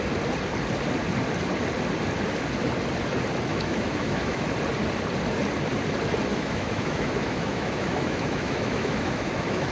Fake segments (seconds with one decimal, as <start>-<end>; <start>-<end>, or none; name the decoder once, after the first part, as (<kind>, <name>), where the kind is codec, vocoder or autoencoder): 3.5-4.5 (autoencoder, DAC-VAE); 6.3-9.7